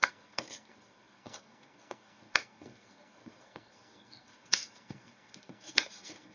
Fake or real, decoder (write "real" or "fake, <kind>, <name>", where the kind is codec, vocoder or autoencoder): fake, codec, SNAC